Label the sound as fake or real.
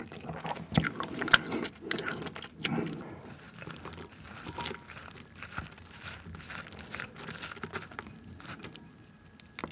real